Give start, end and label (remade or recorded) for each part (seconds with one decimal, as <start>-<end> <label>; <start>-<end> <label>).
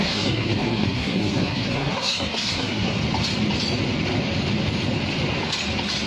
0.0-3.0 remade; 3.0-6.1 recorded